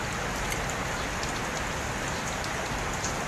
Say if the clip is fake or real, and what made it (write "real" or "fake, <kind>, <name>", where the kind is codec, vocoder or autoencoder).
real